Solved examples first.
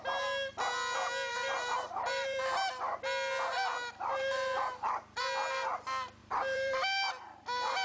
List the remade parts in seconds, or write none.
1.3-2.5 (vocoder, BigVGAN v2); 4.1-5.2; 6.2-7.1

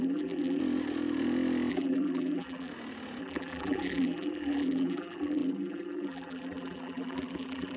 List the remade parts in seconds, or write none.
0.0-0.6 (vocoder, BigVGAN v2); 1.7-2.7; 3.2-7.8

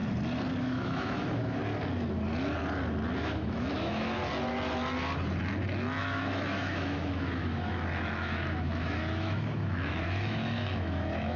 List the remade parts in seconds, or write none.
0.6-1.6 (autoencoder, DAC-VAE); 3.2-4.2; 6.0-11.4

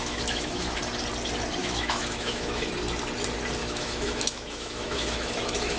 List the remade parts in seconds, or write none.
0.0-0.8 (autoencoder, DAC-VAE); 1.6-2.7; 3.6-5.8

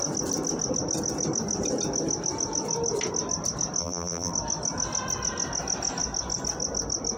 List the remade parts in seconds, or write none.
3.8-4.3 (vocoder, BigVGAN v2)

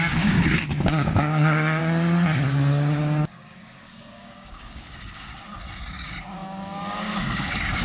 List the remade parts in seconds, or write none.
0.0-1.8 (codec, DAC); 2.9-5.3; 5.9-7.8

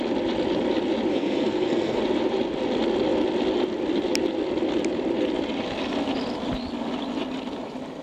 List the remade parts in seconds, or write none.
1.1-2.0 (codec, SNAC)

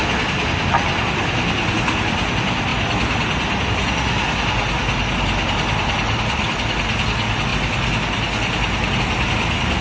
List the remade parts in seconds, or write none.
none